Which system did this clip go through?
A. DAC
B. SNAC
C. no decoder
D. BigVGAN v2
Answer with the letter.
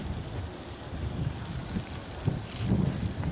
C